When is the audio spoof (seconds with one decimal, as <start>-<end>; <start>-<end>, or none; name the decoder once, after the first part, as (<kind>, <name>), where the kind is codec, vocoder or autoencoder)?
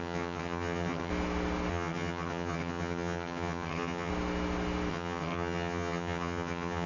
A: 0.0-1.1 (vocoder, HiFi-GAN); 1.7-4.1; 4.9-6.9